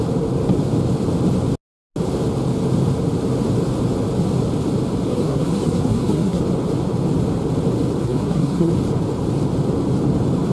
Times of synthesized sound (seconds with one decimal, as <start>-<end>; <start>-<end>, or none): 5.1-6.4; 8.0-8.7